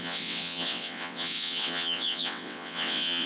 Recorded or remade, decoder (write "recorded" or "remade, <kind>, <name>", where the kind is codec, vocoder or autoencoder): remade, vocoder, WaveNeXt